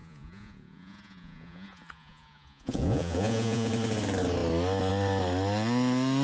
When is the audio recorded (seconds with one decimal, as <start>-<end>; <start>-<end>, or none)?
3.7-6.2